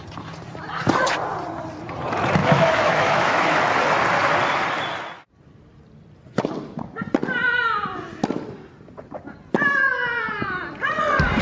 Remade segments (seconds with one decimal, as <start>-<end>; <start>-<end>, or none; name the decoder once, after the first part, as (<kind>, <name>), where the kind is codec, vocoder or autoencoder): 2.4-3.6 (autoencoder, DAC-VAE)